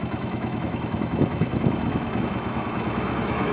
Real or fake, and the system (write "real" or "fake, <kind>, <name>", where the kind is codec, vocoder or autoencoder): fake, autoencoder, DAC-VAE